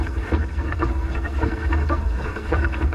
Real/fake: fake